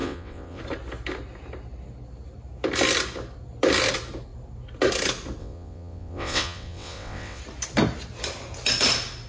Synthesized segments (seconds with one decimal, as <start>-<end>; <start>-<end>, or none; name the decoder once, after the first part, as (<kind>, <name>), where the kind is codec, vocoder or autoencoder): 0.0-0.6 (vocoder, WaveNeXt); 5.4-7.4